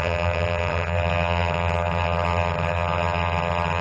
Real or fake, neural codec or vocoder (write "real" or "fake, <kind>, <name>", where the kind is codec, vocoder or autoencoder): fake, vocoder, HiFi-GAN